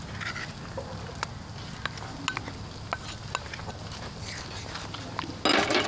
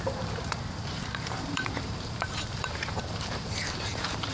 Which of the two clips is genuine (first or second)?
first